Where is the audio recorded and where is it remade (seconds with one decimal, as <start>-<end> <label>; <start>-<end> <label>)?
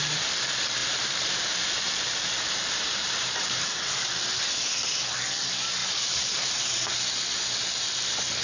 0.0-0.8 recorded; 0.8-3.9 remade; 3.9-5.8 recorded; 5.8-6.5 remade; 6.5-8.4 recorded